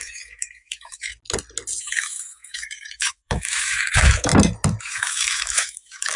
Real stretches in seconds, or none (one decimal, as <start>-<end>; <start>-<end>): 1.1-1.8; 4.3-4.8

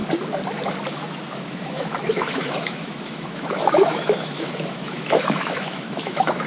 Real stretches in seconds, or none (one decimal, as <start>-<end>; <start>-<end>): 0.0-0.9